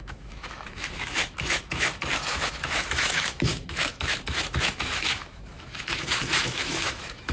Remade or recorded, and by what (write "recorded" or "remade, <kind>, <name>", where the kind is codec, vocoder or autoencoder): remade, autoencoder, DAC-VAE